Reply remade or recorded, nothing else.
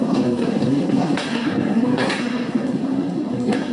remade